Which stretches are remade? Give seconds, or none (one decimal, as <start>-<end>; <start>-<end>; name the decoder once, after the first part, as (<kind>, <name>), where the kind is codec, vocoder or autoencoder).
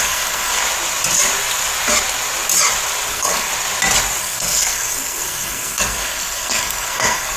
0.0-0.6 (codec, SNAC); 3.1-3.5; 4.2-7.4